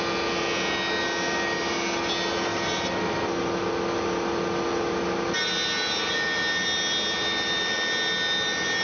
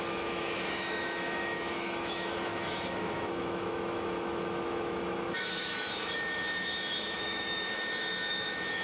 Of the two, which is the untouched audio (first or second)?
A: first